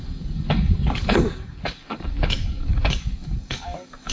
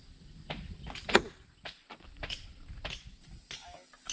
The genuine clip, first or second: second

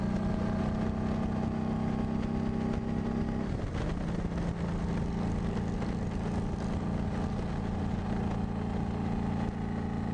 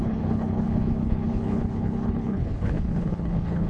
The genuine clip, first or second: first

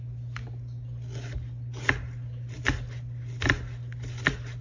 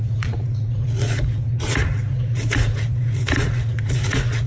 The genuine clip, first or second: first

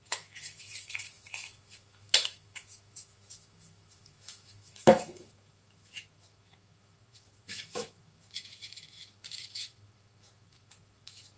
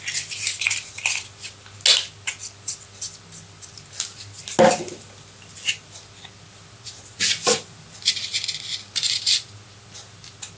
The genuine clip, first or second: second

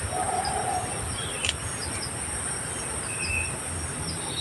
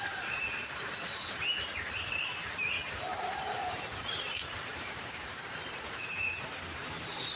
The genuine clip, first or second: first